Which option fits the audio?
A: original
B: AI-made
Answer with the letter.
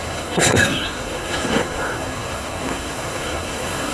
B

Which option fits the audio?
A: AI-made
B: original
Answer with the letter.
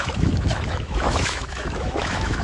A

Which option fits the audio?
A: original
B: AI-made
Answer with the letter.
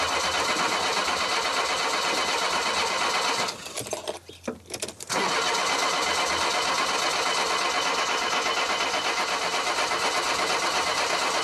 A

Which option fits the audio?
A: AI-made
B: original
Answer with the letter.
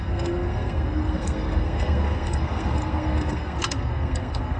A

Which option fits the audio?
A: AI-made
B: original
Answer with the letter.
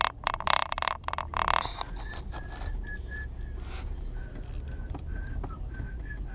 B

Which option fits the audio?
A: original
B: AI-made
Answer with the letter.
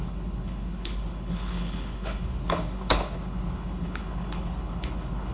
B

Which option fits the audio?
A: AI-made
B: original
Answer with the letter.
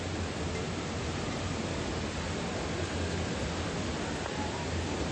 B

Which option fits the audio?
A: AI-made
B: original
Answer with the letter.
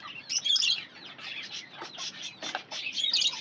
B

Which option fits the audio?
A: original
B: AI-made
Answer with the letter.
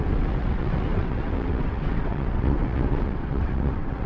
B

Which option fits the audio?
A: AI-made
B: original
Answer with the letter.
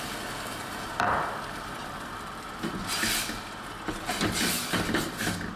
B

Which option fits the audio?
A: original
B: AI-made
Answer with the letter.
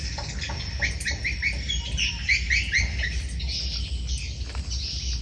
A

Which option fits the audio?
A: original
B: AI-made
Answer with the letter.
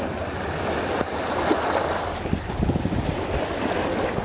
A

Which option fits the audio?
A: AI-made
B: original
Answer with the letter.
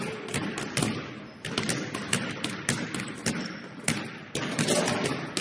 B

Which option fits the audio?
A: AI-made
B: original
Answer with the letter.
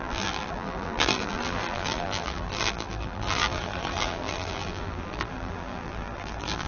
A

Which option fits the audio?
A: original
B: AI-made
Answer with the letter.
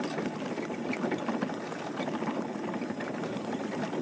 A